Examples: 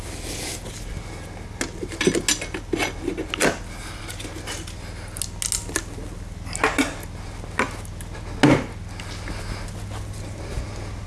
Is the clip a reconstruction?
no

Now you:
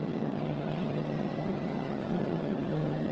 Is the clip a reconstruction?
yes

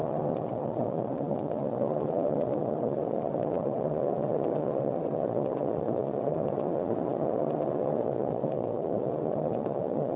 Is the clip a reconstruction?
yes